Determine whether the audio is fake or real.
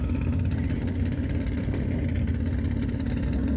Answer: real